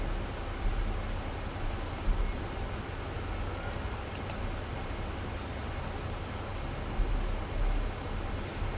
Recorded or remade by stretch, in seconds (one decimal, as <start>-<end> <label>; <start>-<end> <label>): 0.0-8.8 recorded